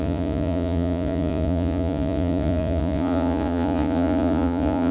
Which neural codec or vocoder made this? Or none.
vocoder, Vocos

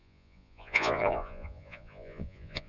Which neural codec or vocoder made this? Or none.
vocoder, Vocos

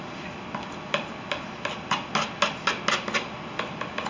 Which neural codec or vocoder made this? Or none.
none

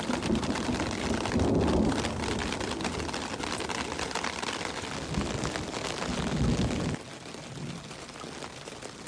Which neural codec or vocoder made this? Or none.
none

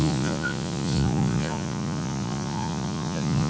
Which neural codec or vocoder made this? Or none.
vocoder, Vocos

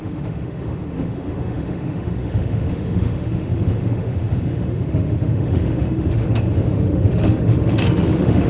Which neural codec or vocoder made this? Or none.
autoencoder, DAC-VAE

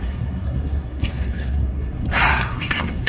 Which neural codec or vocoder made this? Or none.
codec, SNAC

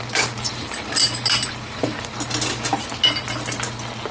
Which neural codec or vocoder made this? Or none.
none